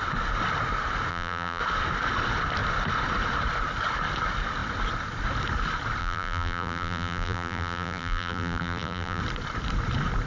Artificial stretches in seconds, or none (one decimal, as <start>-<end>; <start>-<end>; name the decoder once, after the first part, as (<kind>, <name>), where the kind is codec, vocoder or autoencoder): 1.1-1.6 (vocoder, BigVGAN v2); 6.0-9.2